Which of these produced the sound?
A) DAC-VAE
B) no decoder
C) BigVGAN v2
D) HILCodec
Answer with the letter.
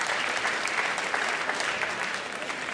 B